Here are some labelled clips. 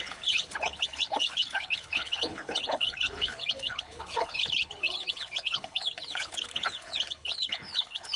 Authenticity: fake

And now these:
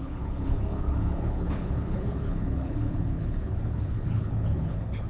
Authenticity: fake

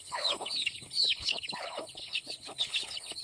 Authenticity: fake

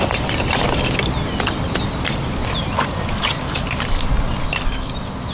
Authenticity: real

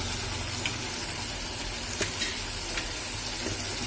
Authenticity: real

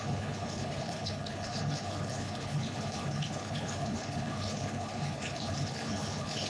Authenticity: fake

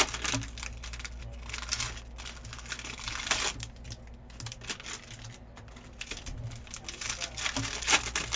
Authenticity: real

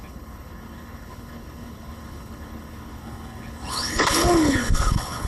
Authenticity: fake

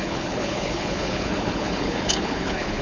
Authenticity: fake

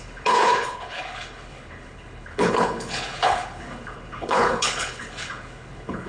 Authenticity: fake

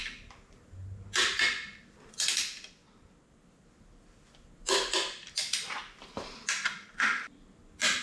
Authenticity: real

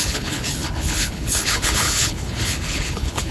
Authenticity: fake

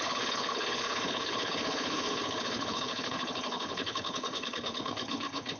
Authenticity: fake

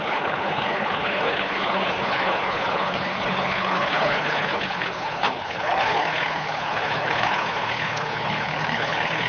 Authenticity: fake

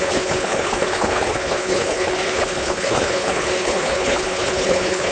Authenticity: fake